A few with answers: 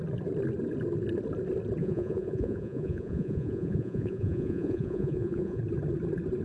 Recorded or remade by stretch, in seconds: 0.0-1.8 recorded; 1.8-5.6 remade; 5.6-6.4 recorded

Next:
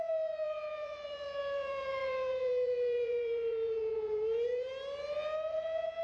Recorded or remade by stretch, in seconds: 0.0-4.7 remade; 4.7-5.5 recorded; 5.5-6.0 remade

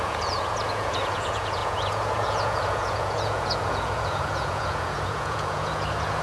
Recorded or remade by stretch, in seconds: 0.0-6.2 remade

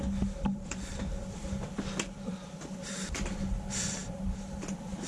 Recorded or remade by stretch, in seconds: 0.0-0.5 recorded; 0.5-1.4 remade; 1.4-4.0 recorded; 4.0-5.1 remade

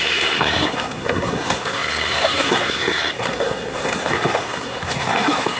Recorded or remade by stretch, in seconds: 0.0-5.6 remade

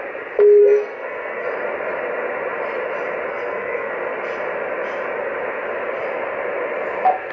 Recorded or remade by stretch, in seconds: 0.0-0.6 recorded; 0.6-1.5 remade; 1.5-3.3 recorded; 3.3-3.9 remade; 3.9-7.3 recorded

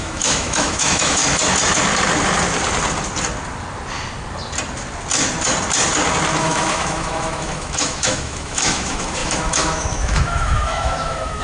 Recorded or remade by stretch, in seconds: 0.0-1.2 remade; 1.2-6.4 recorded; 6.4-11.4 remade

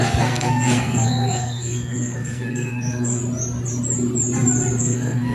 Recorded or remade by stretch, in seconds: 0.0-3.2 remade; 3.2-4.8 recorded; 4.8-5.3 remade